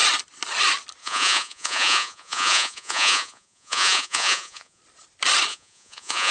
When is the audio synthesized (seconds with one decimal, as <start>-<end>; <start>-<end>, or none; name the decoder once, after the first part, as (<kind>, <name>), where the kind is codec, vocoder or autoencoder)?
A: 1.0-4.8 (vocoder, Vocos); 5.5-6.3